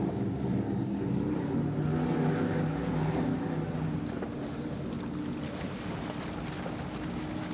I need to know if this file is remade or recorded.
recorded